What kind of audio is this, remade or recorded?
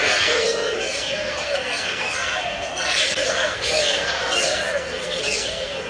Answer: remade